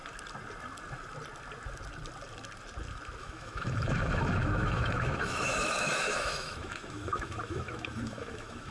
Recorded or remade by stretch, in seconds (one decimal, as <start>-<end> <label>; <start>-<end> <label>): 0.0-3.2 recorded; 3.2-8.7 remade

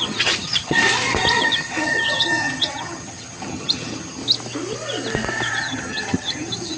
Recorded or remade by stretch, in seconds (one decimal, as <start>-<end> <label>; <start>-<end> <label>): 0.0-0.8 remade; 0.8-1.4 recorded; 1.4-4.2 remade; 4.2-5.5 recorded; 5.5-6.8 remade

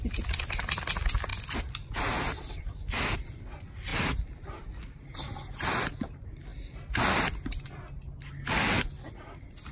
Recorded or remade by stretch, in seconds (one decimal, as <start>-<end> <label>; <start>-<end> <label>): 0.0-9.7 recorded

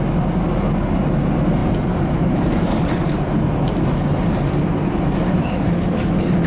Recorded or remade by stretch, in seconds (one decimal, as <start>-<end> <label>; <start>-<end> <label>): 0.0-1.6 recorded; 1.6-3.4 remade; 3.4-4.8 recorded; 4.8-5.4 remade; 5.4-6.5 recorded

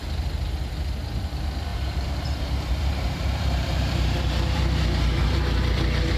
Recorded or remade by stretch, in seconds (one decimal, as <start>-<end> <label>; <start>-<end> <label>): 0.0-1.7 recorded; 1.7-5.4 remade; 5.4-6.2 recorded